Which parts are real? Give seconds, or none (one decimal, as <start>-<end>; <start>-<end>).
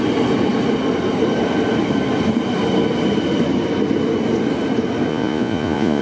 0.0-5.1